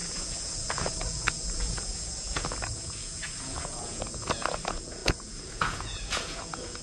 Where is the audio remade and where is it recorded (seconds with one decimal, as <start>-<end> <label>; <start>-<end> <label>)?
0.0-6.8 remade